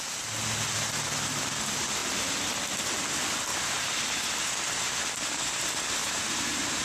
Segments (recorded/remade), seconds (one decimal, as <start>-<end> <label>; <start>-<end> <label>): 0.0-3.5 recorded; 3.5-4.4 remade; 4.4-6.0 recorded; 6.0-6.8 remade